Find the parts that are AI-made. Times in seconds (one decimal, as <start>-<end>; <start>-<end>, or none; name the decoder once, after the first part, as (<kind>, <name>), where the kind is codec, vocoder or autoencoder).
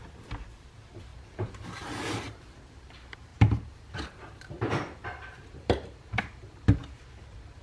1.1-2.5 (vocoder, BigVGAN v2); 3.3-6.2